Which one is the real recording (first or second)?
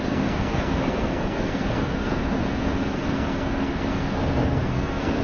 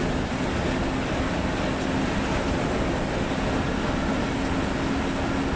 second